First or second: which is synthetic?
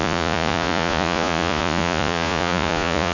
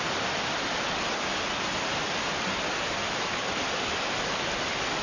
first